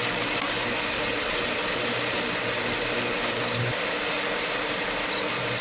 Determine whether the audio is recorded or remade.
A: remade